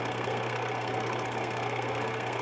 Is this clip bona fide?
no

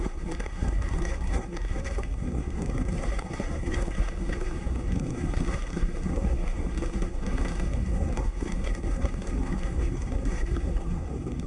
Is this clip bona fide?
no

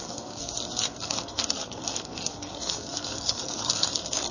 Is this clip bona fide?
no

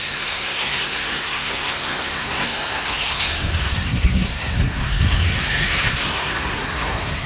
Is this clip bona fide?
no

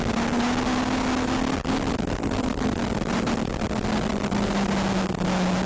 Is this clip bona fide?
yes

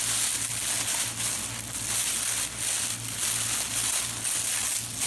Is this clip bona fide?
yes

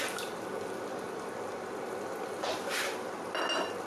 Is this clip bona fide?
yes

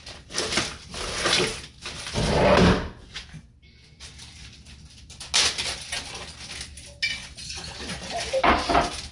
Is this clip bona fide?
yes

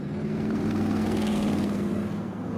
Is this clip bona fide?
no